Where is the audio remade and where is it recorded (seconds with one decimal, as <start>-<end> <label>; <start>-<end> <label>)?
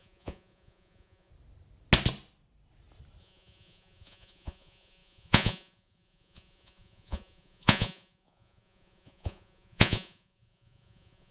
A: 0.0-1.3 remade; 1.3-3.2 recorded; 3.2-11.3 remade